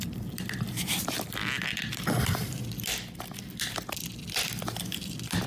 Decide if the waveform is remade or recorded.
remade